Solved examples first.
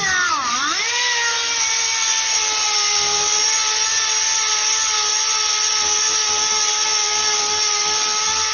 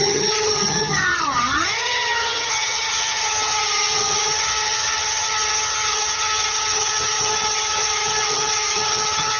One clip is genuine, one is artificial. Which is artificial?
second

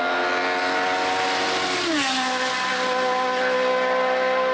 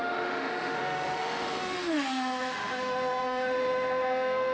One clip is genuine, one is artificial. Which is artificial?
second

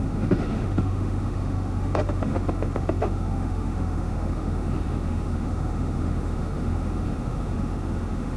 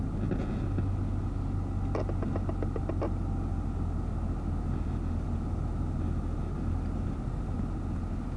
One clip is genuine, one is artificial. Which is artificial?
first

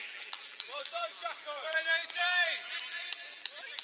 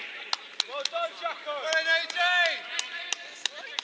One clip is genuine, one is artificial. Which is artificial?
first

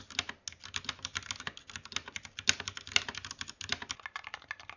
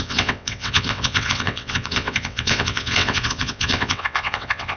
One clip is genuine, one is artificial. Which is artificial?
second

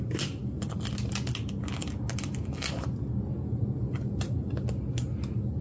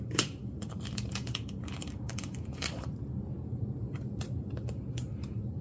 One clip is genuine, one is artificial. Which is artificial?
second